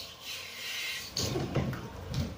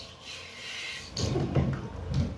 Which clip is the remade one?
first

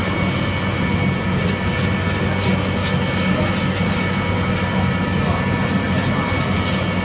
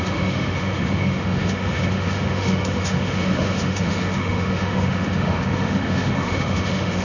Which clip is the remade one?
second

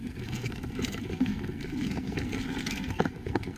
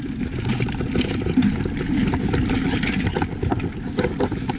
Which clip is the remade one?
first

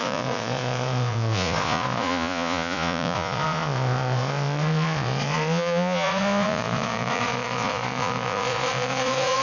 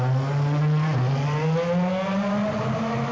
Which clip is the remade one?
first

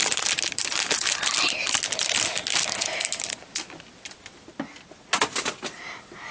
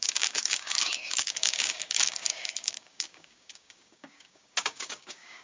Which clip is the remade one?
second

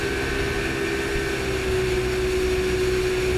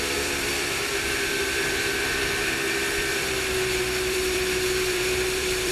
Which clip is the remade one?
second